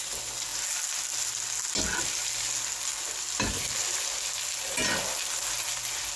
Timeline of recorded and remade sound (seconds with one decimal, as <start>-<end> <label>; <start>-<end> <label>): 0.0-6.2 recorded